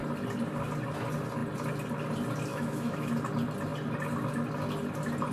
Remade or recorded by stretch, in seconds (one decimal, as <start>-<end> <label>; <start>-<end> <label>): 0.0-2.5 recorded; 2.5-3.1 remade; 3.1-5.3 recorded

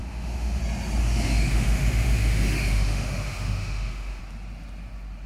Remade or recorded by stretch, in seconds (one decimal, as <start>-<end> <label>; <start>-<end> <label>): 0.0-0.6 remade; 0.6-1.0 recorded; 1.0-4.2 remade; 4.2-5.3 recorded

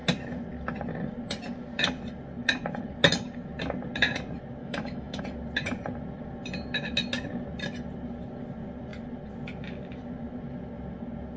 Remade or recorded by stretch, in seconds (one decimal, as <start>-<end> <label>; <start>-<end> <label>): 0.0-4.6 recorded; 4.6-5.2 remade; 5.2-11.4 recorded

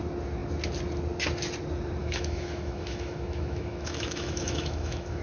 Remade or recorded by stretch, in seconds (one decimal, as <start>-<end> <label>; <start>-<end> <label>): 0.0-2.0 recorded; 2.0-5.2 remade

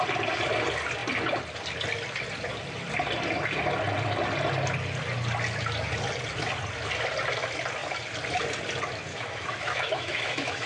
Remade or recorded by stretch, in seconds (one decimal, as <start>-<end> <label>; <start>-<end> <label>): 0.0-9.1 recorded; 9.1-10.7 remade

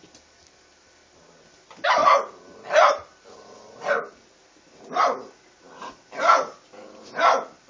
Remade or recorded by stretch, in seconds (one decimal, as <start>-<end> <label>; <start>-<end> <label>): 0.0-7.7 recorded